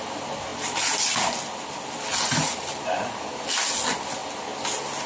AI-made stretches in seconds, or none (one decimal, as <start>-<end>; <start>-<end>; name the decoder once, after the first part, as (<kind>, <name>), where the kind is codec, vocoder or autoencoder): none